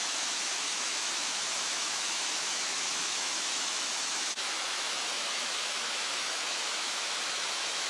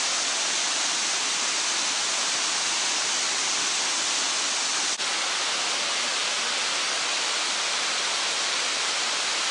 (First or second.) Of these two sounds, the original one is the second